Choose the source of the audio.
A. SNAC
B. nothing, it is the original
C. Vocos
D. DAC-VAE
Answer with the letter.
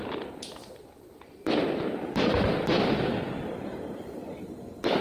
B